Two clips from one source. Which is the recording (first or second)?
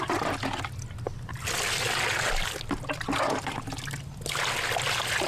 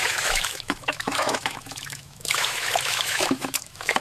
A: first